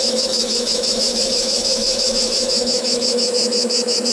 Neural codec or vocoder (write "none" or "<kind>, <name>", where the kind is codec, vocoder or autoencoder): autoencoder, DAC-VAE